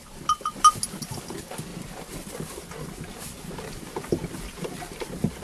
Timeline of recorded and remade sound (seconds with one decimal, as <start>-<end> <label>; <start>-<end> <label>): 0.0-5.4 recorded